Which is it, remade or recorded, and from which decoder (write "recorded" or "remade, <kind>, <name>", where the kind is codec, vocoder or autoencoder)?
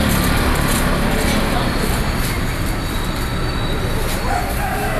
recorded